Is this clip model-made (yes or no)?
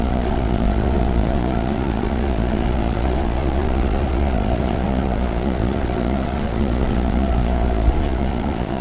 yes